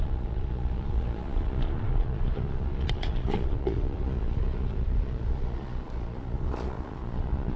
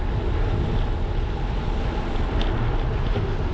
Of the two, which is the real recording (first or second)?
second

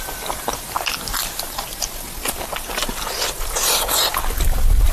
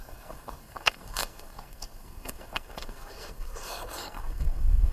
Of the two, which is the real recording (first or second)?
first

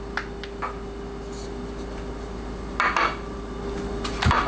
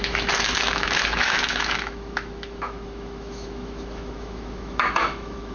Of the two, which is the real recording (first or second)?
first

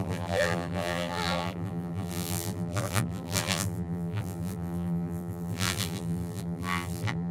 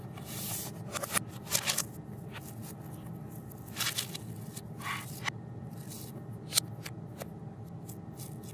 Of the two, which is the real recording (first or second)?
second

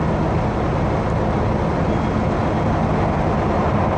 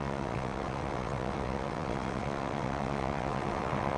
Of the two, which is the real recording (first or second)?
first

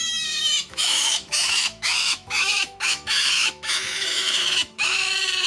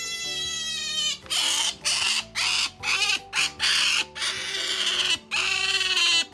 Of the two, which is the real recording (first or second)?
second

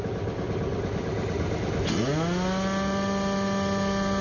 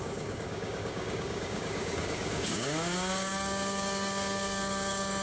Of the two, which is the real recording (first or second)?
first